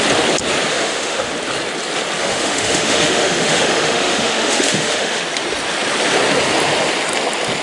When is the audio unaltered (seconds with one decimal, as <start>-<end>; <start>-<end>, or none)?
0.0-0.7; 1.3-2.2; 5.2-7.6